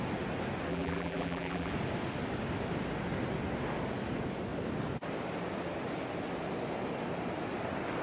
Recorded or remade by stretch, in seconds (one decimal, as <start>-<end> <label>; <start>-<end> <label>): 0.0-0.7 recorded; 0.7-1.7 remade; 1.7-8.0 recorded